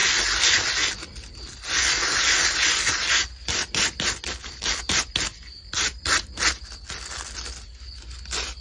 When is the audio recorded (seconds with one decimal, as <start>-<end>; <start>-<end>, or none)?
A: 0.0-8.6